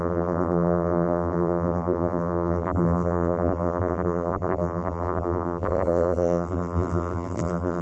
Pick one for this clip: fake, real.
fake